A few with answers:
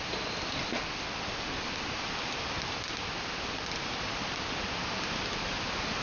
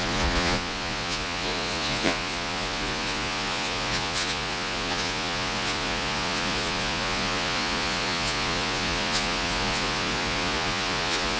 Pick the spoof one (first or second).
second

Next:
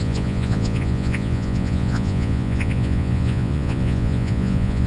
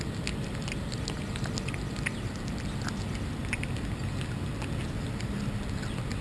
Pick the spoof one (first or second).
first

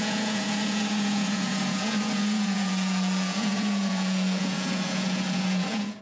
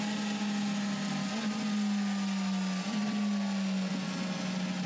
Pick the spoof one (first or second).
first